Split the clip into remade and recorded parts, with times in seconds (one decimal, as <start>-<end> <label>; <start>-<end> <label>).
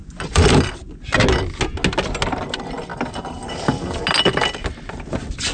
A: 0.0-5.5 recorded